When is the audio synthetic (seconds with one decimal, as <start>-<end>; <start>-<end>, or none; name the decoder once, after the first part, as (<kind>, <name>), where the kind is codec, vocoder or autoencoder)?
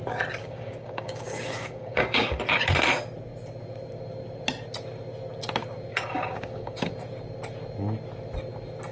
0.4-2.4 (codec, DAC); 5.9-6.9